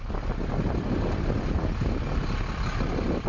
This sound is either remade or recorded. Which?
recorded